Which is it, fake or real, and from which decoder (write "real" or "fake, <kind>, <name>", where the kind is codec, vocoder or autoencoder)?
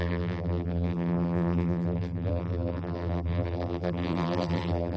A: fake, vocoder, BigVGAN v2